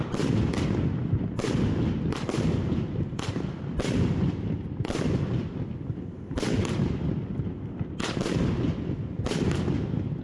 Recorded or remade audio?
recorded